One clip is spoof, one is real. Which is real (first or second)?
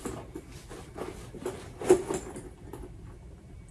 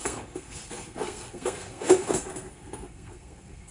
first